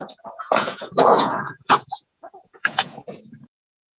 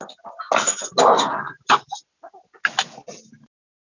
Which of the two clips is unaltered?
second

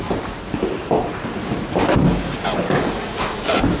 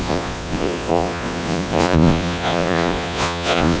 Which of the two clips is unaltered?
first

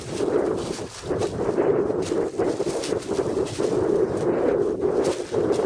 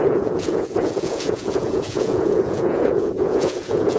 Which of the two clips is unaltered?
first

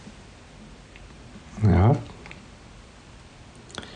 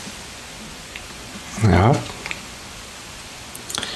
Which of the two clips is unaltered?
first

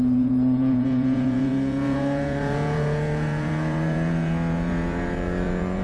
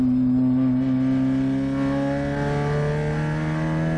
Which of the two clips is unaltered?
second